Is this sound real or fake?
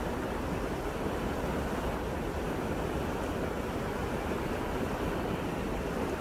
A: real